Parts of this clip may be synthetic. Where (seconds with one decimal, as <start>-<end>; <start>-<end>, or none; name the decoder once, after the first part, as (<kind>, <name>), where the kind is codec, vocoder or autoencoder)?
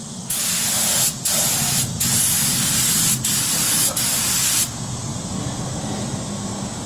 none